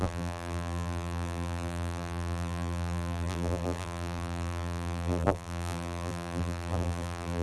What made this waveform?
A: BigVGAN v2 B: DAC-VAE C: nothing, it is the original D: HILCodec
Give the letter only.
A